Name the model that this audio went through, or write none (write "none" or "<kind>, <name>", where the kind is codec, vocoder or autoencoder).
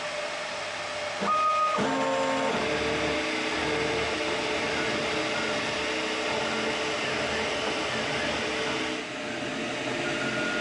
none